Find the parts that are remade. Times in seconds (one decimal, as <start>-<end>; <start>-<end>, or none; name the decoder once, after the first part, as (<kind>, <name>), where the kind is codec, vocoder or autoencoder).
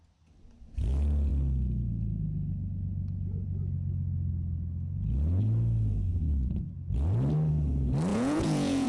8.1-8.9 (vocoder, Vocos)